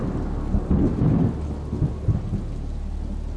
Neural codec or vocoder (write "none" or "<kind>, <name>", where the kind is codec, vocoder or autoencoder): none